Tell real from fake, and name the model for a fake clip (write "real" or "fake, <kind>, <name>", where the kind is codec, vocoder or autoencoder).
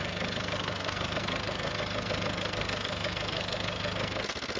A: fake, codec, SNAC